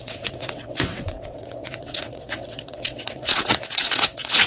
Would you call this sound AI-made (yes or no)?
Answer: yes